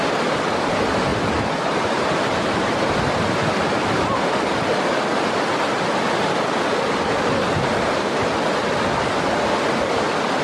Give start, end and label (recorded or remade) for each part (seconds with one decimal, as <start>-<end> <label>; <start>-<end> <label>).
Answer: 0.0-1.1 recorded; 1.1-3.5 remade; 3.5-10.4 recorded